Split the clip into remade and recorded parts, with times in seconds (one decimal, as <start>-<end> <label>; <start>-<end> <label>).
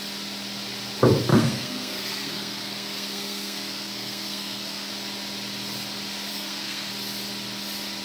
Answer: 0.0-1.3 recorded; 1.3-4.9 remade; 4.9-6.3 recorded; 6.3-6.9 remade; 6.9-8.0 recorded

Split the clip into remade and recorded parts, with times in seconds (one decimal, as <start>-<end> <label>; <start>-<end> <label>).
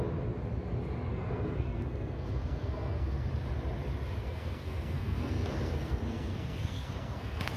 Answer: 0.0-1.1 recorded; 1.1-3.3 remade; 3.3-4.2 recorded; 4.2-7.6 remade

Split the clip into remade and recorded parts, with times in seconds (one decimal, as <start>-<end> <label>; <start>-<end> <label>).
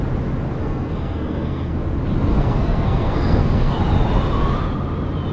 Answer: 0.0-0.6 recorded; 0.6-1.8 remade; 1.8-2.3 recorded; 2.3-3.8 remade; 3.8-5.3 recorded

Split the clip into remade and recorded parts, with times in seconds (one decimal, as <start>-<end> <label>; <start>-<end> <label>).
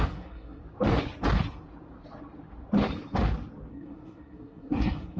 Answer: 0.0-0.6 remade; 0.6-3.7 recorded; 3.7-5.2 remade